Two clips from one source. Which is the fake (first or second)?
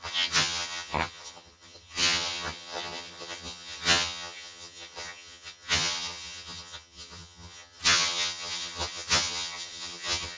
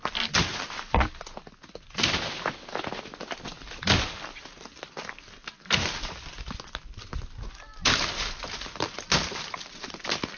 first